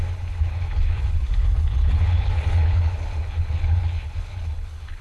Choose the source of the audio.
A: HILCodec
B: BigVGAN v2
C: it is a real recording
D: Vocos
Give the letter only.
A